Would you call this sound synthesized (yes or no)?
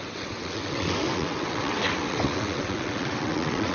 yes